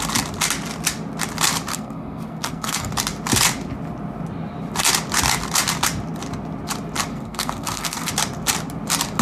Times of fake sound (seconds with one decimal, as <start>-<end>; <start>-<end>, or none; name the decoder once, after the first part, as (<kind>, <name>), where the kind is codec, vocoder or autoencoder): 1.7-2.9 (codec, SNAC); 7.1-8.1